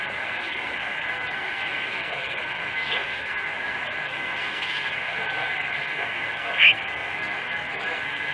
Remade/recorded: remade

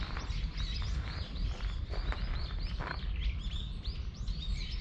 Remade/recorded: recorded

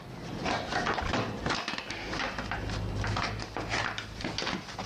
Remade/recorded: recorded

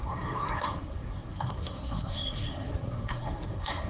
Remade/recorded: remade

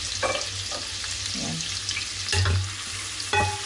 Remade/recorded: recorded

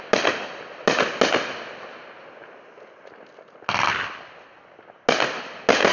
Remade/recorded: recorded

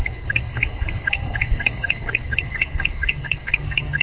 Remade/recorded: remade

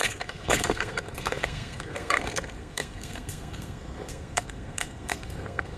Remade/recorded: remade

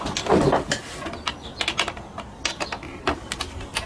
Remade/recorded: recorded